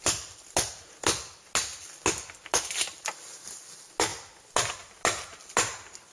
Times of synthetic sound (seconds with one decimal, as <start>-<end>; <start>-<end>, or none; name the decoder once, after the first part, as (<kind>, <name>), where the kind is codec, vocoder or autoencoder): none